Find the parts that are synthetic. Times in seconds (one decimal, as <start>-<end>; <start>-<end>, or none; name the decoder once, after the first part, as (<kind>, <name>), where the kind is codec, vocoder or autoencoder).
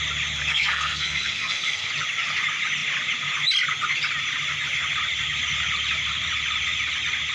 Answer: 0.5-1.9 (codec, SNAC)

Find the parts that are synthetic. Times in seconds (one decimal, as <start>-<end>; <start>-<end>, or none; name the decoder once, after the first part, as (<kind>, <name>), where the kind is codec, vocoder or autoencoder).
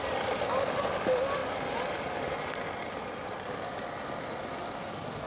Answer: none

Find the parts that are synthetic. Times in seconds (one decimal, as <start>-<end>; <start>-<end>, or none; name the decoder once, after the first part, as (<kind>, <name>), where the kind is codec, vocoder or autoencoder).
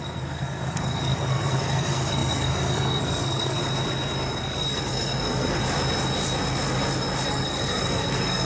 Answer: 0.0-3.6 (codec, SNAC); 4.4-5.6; 7.3-8.4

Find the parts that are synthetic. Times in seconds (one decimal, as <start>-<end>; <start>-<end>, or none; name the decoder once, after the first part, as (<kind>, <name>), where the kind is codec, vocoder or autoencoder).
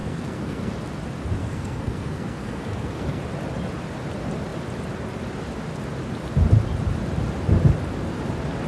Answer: 0.0-0.7 (codec, SNAC); 1.4-3.2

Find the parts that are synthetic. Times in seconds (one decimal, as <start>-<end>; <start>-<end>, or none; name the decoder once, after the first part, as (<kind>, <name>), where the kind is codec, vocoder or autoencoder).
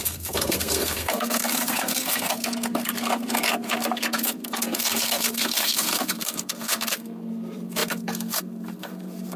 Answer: 0.0-9.4 (codec, SNAC)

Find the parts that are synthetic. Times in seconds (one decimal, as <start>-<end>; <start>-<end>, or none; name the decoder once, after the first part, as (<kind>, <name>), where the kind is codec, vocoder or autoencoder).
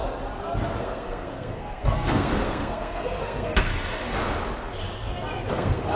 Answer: 0.8-3.7 (codec, SNAC); 5.5-6.0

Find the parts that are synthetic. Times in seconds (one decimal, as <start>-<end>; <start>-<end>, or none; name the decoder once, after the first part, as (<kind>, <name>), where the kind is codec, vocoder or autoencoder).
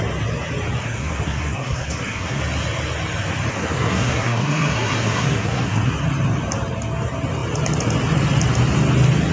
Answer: 0.8-2.4 (codec, SNAC); 3.5-5.9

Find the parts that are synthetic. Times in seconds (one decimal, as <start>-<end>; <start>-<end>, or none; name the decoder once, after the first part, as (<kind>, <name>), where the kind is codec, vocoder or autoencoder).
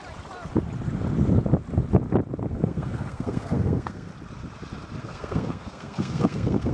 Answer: 2.5-4.1 (codec, SNAC); 5.0-6.7